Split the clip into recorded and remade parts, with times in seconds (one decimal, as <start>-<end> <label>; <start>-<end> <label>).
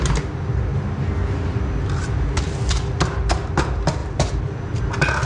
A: 0.0-4.0 recorded; 4.0-4.8 remade; 4.8-5.3 recorded